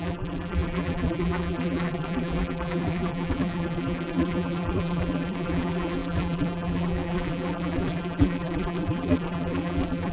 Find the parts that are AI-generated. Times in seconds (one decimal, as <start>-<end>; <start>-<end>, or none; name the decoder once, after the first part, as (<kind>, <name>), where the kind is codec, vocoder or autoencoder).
0.0-10.1 (vocoder, BigVGAN v2)